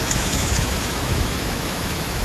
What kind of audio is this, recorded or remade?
remade